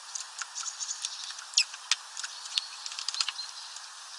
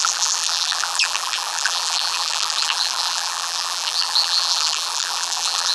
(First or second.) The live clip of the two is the first